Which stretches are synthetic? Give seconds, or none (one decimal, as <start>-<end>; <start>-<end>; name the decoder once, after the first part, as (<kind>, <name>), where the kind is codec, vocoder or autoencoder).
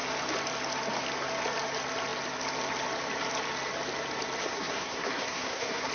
4.4-5.9 (codec, SNAC)